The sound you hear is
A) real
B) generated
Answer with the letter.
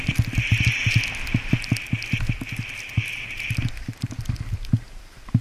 A